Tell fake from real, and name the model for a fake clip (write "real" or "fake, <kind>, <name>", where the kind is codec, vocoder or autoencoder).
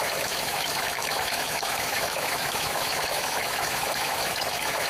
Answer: fake, autoencoder, DAC-VAE